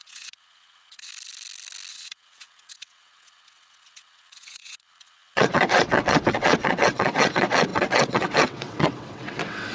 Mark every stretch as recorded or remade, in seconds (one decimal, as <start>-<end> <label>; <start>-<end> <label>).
0.0-1.1 remade; 1.1-1.9 recorded; 1.9-9.7 remade